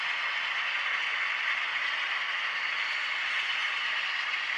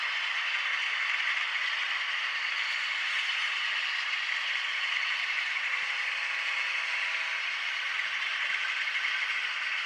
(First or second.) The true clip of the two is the first